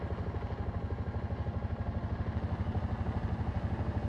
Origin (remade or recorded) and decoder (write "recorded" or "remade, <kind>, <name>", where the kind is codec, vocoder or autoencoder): recorded